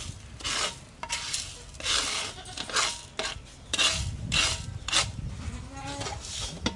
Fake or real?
real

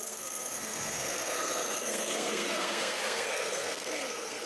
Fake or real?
fake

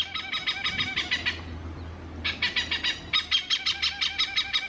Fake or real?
real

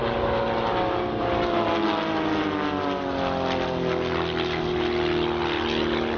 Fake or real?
real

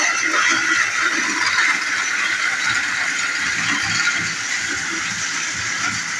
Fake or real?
real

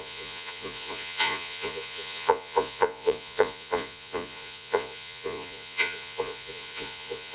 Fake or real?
fake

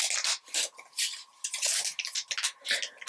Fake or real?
real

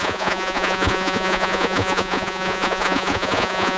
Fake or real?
fake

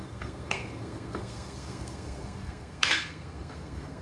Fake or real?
fake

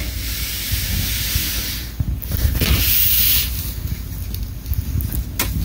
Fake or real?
real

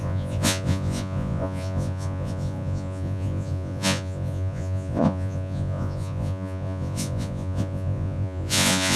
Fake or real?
fake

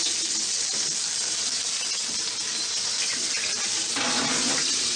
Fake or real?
real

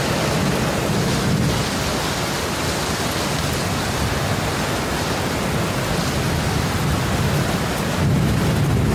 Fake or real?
real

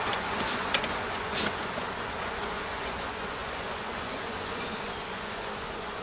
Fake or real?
fake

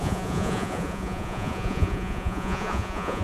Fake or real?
fake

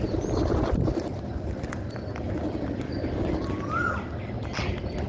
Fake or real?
real